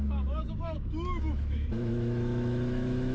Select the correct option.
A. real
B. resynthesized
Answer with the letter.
B